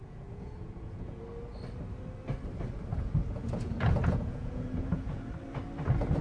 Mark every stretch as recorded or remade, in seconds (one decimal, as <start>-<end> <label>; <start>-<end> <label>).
0.0-1.2 remade; 1.2-2.9 recorded; 2.9-5.3 remade; 5.3-6.2 recorded